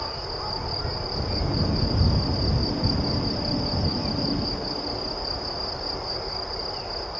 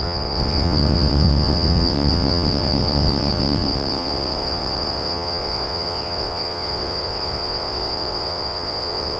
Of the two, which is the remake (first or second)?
second